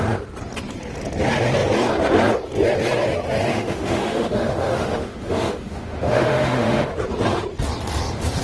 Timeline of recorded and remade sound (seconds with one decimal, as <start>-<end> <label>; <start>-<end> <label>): 0.0-3.5 recorded; 3.5-6.9 remade; 6.9-8.4 recorded